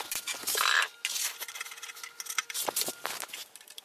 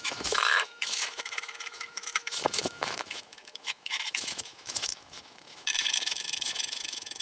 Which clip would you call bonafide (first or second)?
first